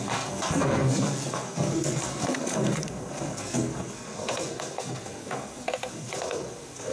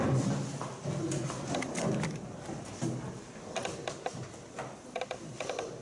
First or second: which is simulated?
first